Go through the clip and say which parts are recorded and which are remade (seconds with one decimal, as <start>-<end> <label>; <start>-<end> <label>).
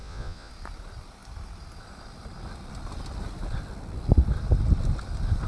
0.0-0.5 remade; 0.5-5.5 recorded